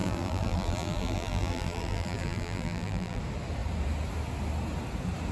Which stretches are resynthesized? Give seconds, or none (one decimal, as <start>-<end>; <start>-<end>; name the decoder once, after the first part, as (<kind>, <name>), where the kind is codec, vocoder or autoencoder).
0.0-3.2 (vocoder, BigVGAN v2)